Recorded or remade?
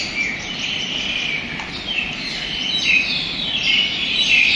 recorded